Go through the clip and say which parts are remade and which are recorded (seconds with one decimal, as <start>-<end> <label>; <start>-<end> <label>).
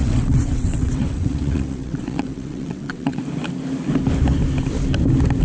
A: 0.0-3.2 remade; 3.2-5.4 recorded